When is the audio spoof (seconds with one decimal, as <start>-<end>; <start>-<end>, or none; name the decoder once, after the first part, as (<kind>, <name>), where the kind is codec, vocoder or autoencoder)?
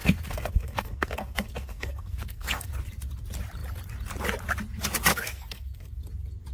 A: 0.0-2.7 (codec, SNAC); 5.1-6.0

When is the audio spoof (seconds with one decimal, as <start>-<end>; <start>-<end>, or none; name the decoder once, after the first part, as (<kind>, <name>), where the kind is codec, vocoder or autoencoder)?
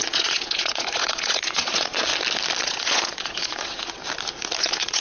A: 0.0-2.1 (vocoder, Vocos); 2.6-4.0; 4.6-5.0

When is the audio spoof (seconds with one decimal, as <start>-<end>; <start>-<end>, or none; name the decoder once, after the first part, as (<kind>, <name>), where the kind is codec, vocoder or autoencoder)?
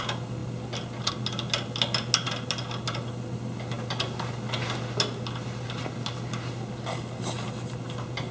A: none